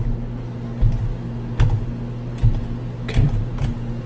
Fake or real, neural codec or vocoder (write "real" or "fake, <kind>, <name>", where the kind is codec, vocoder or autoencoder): real